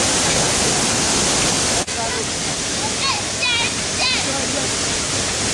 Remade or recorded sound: recorded